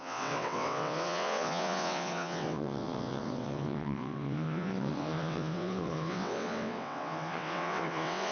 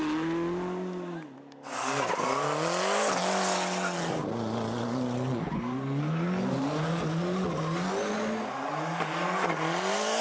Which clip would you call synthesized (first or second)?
first